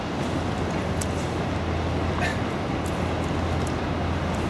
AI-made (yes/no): no